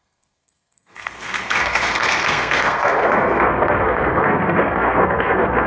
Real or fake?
fake